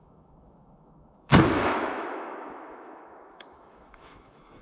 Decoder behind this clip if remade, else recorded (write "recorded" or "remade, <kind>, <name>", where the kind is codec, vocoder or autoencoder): remade, autoencoder, DAC-VAE